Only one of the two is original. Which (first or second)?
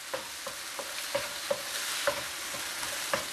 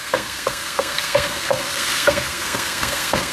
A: first